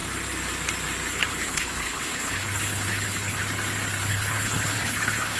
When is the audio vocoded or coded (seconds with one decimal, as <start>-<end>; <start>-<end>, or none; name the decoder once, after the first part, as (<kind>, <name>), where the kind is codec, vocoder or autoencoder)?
1.1-3.4 (codec, HILCodec); 4.1-5.4